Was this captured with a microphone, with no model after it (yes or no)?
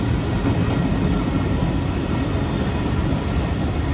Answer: yes